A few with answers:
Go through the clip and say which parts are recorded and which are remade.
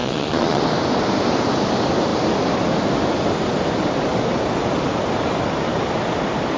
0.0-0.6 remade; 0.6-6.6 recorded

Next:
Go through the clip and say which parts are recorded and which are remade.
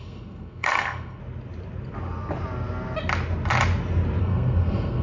0.0-1.2 remade; 1.2-4.2 recorded; 4.2-5.0 remade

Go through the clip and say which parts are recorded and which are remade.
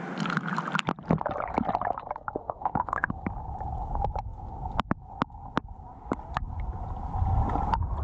0.0-2.4 recorded; 2.4-3.1 remade; 3.1-8.0 recorded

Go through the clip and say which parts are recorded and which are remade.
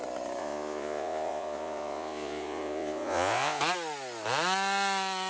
0.0-0.4 recorded; 0.4-3.6 remade; 3.6-5.3 recorded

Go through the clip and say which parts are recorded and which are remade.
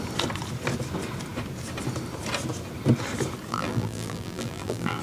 0.0-3.5 recorded; 3.5-5.0 remade